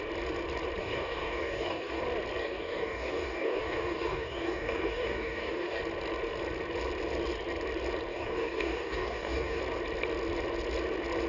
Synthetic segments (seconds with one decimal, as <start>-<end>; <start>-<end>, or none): 0.8-2.0; 2.4-5.8; 8.1-9.6

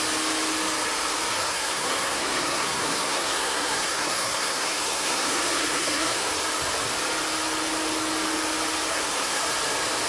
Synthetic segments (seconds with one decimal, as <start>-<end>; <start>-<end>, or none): 1.4-6.3; 8.9-9.4